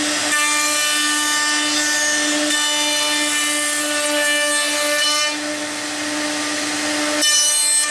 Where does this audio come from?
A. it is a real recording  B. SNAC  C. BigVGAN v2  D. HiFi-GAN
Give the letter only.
A